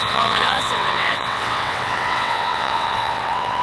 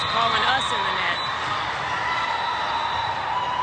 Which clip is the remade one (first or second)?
first